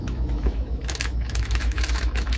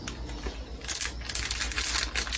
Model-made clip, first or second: first